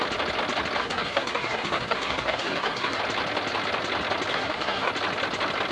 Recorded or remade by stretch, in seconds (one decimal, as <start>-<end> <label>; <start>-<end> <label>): 0.0-0.8 recorded; 0.8-3.0 remade; 3.0-4.3 recorded; 4.3-4.9 remade; 4.9-5.7 recorded